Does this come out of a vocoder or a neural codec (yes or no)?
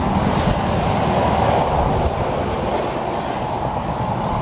no